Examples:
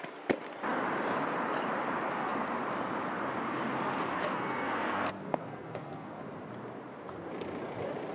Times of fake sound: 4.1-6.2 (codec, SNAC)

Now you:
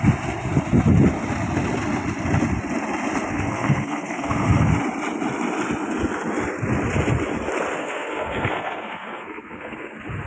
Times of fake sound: 3.3-4.7 (codec, SNAC); 7.8-9.9

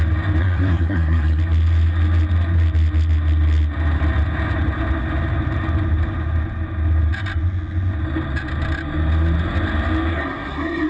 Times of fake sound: 0.4-1.4 (codec, SNAC); 10.1-10.9

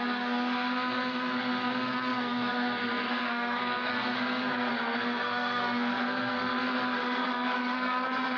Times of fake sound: 0.0-8.4 (codec, SNAC)

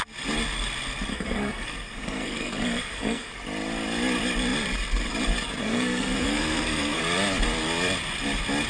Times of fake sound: 1.1-3.3 (codec, SNAC); 5.6-7.0